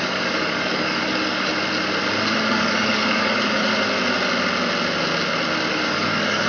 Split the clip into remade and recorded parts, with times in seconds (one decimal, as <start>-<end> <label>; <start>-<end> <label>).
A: 0.0-1.5 remade; 1.5-2.5 recorded; 2.5-3.7 remade; 3.7-5.7 recorded; 5.7-6.5 remade